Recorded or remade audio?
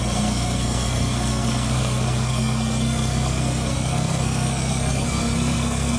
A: remade